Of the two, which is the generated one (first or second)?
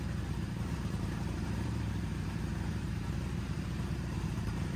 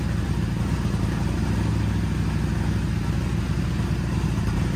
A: first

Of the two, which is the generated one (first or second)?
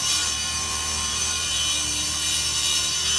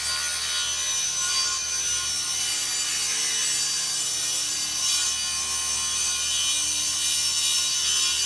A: first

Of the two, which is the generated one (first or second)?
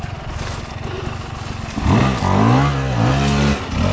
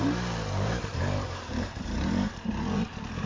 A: second